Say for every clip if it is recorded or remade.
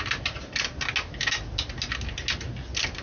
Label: recorded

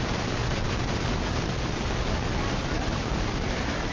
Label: recorded